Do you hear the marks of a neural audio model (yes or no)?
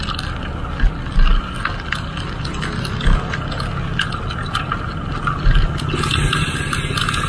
no